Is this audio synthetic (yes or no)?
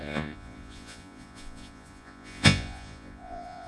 yes